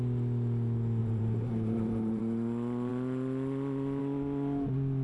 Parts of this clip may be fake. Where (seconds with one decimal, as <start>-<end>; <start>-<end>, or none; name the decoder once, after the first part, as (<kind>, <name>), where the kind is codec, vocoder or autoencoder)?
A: 1.0-2.2 (vocoder, BigVGAN v2)